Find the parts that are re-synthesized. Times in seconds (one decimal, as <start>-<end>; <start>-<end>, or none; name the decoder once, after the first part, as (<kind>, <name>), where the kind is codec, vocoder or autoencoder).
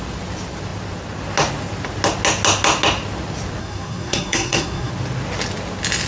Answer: 3.6-4.9 (codec, SNAC)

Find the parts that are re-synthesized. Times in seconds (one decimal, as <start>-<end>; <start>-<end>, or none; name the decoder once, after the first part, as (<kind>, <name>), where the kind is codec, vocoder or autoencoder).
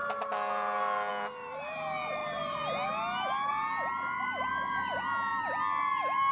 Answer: none